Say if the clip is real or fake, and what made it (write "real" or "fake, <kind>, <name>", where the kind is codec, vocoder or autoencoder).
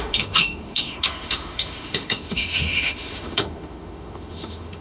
fake, autoencoder, DAC-VAE